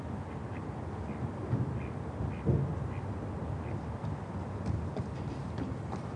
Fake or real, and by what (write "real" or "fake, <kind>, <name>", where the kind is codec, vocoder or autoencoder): real